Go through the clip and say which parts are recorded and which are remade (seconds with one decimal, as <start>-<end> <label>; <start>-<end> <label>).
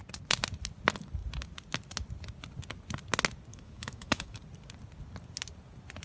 0.0-3.5 recorded; 3.5-4.4 remade; 4.4-6.0 recorded